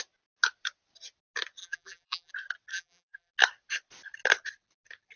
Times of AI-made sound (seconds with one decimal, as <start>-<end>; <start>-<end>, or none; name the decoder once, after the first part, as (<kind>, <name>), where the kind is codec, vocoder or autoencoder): 1.6-2.3 (vocoder, BigVGAN v2); 2.7-3.3